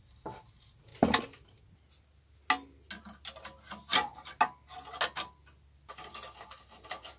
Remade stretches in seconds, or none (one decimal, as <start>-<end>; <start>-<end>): none